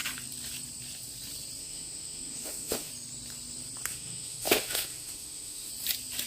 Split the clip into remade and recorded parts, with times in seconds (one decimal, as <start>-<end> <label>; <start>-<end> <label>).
0.0-1.6 recorded; 1.6-2.9 remade; 2.9-3.9 recorded; 3.9-5.7 remade; 5.7-6.3 recorded